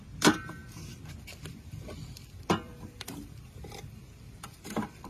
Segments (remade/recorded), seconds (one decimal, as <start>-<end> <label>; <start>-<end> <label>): 0.0-5.1 remade